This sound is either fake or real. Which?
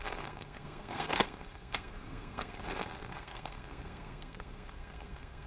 fake